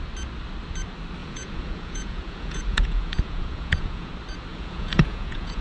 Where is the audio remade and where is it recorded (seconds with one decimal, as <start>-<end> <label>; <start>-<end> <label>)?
0.0-1.2 recorded; 1.2-4.1 remade; 4.1-4.5 recorded; 4.5-5.6 remade